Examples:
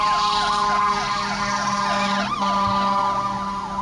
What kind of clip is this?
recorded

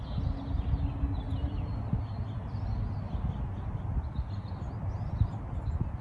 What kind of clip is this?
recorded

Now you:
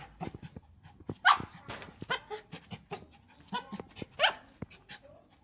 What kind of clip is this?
recorded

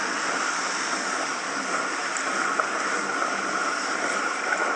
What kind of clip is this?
recorded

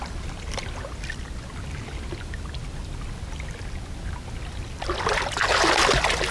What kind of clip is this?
recorded